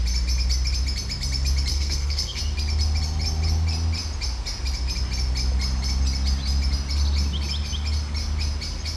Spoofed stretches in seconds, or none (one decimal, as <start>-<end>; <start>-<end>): 1.7-2.4